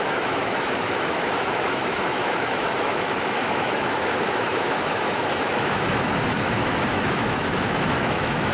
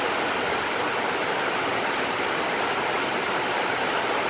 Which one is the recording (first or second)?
second